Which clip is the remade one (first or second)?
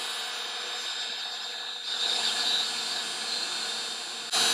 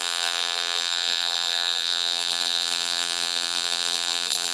second